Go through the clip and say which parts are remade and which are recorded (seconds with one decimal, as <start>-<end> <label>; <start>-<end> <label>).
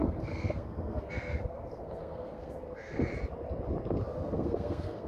0.0-3.1 remade; 3.1-4.1 recorded; 4.1-5.1 remade